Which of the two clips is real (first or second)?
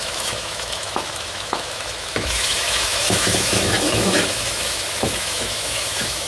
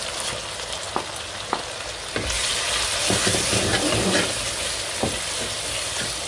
second